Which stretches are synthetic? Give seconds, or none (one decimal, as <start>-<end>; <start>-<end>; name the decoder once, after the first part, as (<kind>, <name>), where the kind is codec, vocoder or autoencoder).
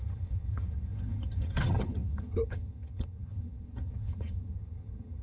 0.0-5.2 (vocoder, HiFi-GAN)